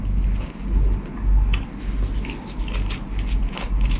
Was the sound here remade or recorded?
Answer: recorded